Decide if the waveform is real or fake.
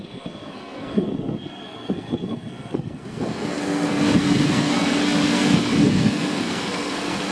fake